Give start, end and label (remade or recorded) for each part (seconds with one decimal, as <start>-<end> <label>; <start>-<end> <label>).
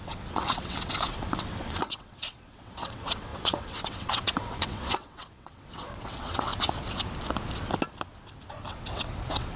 0.0-6.5 remade; 6.5-8.7 recorded; 8.7-9.6 remade